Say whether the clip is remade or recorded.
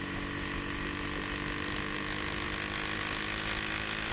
recorded